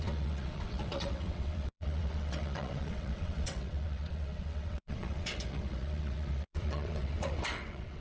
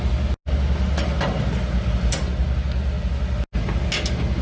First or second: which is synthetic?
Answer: first